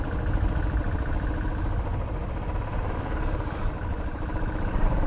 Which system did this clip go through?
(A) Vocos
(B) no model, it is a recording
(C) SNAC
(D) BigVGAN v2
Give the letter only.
B